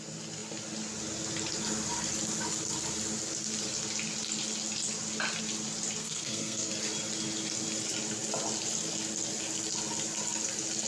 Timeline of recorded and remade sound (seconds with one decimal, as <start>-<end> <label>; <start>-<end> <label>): 0.0-6.0 recorded; 6.0-6.7 remade; 6.7-10.9 recorded